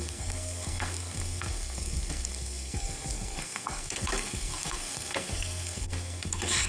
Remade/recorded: remade